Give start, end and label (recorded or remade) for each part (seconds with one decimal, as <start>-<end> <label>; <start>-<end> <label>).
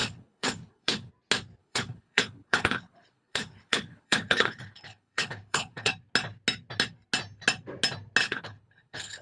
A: 0.0-1.1 remade; 1.1-1.6 recorded; 1.6-5.9 remade; 5.9-8.2 recorded; 8.2-9.2 remade